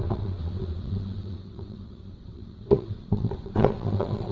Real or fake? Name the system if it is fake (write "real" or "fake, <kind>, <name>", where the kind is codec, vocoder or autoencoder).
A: fake, vocoder, WaveNeXt